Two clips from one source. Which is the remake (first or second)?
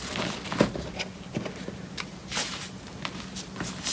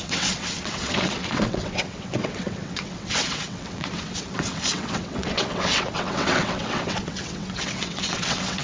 second